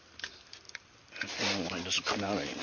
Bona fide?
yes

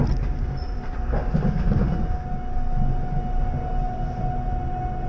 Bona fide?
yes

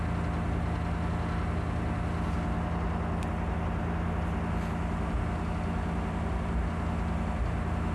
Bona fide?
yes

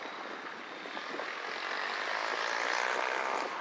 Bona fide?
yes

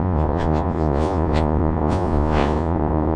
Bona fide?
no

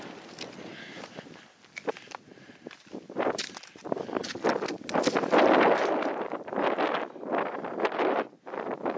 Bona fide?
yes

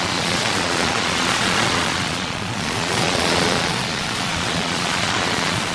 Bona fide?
no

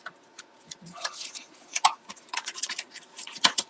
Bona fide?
no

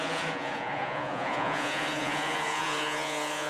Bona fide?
no